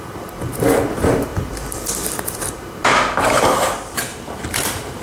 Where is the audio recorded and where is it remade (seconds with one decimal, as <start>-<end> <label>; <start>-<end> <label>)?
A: 0.0-5.0 remade